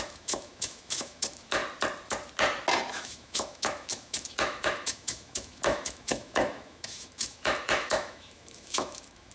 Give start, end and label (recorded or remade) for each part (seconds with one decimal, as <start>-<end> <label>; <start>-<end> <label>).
0.0-1.6 remade; 1.6-2.9 recorded; 2.9-9.3 remade